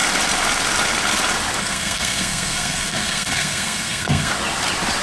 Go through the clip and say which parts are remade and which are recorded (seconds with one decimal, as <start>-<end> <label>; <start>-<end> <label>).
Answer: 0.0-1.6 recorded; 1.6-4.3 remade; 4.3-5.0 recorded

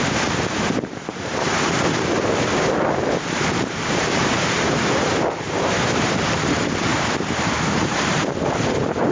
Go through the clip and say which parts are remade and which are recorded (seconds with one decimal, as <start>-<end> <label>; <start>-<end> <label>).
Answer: 0.0-9.1 remade

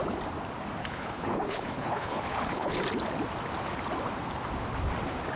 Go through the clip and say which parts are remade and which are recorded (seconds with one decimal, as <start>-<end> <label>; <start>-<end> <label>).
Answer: 0.0-0.8 recorded; 0.8-2.8 remade; 2.8-5.4 recorded